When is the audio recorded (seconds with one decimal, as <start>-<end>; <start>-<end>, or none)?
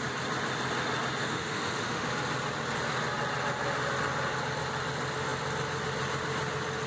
0.0-1.2; 2.1-6.9